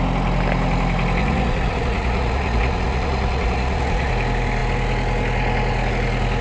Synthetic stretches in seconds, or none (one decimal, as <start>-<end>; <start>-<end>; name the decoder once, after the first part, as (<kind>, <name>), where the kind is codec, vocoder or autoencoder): 1.2-4.1 (vocoder, Vocos)